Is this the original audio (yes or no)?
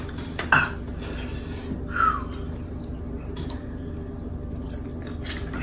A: yes